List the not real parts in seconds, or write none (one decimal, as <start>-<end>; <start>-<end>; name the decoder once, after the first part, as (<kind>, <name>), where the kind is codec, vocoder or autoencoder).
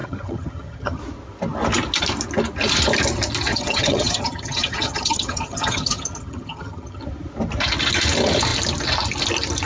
0.0-1.0 (vocoder, HiFi-GAN); 3.5-7.0